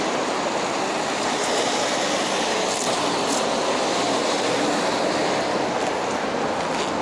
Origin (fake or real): real